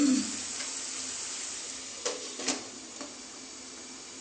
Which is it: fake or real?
real